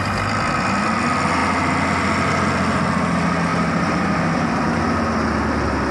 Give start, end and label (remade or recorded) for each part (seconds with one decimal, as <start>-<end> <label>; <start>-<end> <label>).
0.0-3.5 recorded; 3.5-4.8 remade; 4.8-5.9 recorded